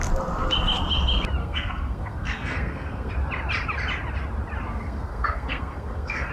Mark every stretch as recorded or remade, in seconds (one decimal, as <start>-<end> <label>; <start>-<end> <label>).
0.0-1.4 recorded; 1.4-3.1 remade; 3.1-4.7 recorded; 4.7-6.3 remade